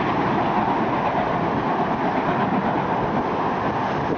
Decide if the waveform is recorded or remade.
recorded